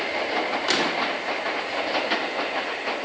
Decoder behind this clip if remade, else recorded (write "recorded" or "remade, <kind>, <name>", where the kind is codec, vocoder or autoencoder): recorded